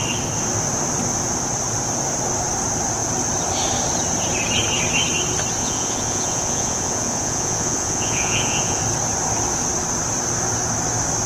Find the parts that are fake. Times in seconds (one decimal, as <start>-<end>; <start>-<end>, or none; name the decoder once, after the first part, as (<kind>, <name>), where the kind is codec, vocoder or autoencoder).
5.6-8.8 (vocoder, Vocos)